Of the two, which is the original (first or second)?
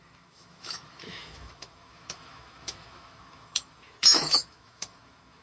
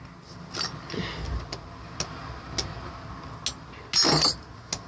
second